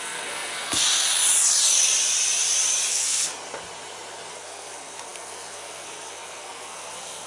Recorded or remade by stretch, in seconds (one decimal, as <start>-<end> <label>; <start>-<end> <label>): 0.0-0.8 remade; 0.8-2.9 recorded; 2.9-3.3 remade; 3.3-4.3 recorded; 4.3-7.3 remade